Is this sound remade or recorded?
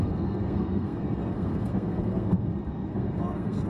remade